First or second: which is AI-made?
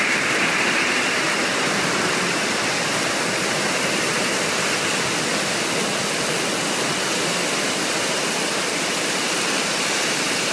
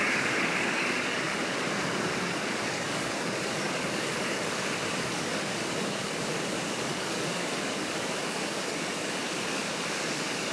second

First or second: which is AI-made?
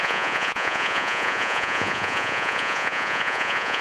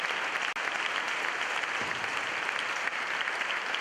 first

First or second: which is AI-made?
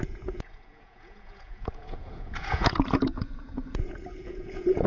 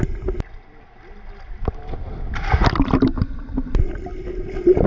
first